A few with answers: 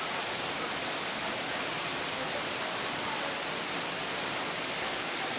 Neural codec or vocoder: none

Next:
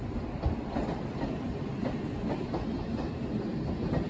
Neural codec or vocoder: none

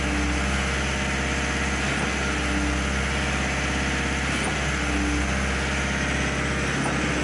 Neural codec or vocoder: none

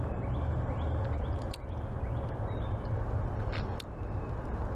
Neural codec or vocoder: none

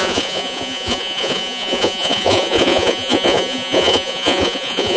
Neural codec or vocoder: vocoder, Vocos